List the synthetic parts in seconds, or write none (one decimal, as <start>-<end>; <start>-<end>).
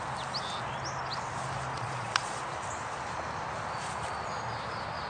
1.7-2.4